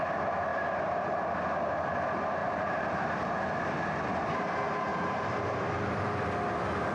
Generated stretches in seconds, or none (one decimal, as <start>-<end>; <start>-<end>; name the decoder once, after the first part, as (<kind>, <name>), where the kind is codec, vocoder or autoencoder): 2.4-3.3 (vocoder, BigVGAN v2); 4.9-6.3